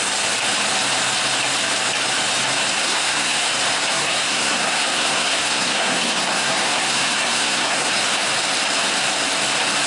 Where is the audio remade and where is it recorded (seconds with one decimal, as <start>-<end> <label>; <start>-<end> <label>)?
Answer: 0.0-2.8 recorded; 2.8-3.5 remade; 3.5-3.9 recorded; 3.9-7.9 remade; 7.9-9.9 recorded